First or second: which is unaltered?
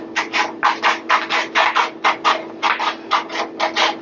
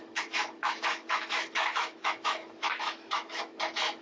first